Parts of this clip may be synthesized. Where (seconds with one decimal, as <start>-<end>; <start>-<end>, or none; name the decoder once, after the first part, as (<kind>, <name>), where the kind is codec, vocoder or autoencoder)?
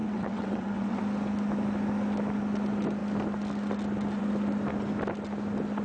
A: 0.0-1.0 (vocoder, WaveNeXt)